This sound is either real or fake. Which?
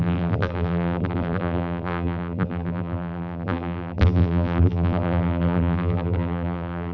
fake